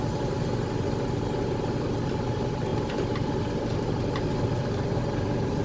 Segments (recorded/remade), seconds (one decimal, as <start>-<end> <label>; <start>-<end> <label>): 0.0-5.6 recorded